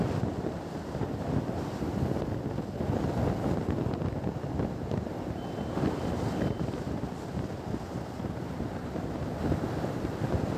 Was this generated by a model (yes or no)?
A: no